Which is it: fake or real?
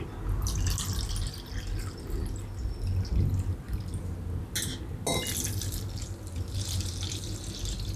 real